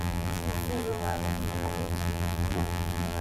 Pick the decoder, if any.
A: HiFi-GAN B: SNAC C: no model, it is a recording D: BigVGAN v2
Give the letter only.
D